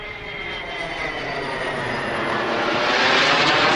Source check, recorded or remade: recorded